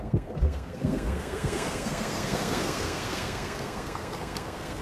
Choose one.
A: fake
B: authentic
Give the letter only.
A